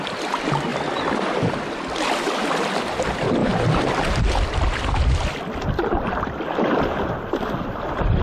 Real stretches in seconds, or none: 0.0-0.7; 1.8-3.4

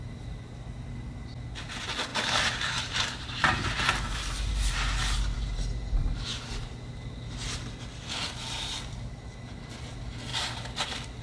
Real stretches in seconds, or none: 0.0-2.1; 6.1-11.2